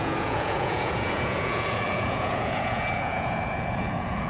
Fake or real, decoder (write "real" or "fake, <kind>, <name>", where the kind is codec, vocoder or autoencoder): fake, vocoder, Vocos